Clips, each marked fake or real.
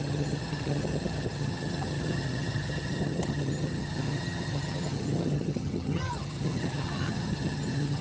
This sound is fake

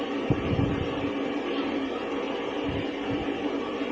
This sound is real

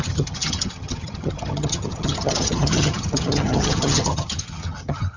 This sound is fake